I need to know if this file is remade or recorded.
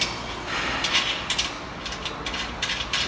recorded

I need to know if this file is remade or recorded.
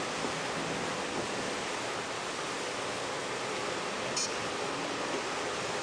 recorded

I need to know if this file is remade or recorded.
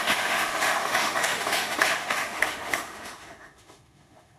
remade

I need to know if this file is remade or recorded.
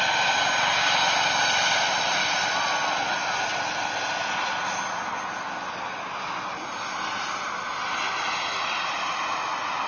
recorded